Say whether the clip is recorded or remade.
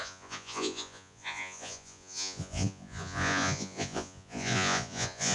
remade